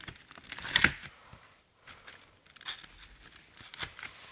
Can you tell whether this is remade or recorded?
recorded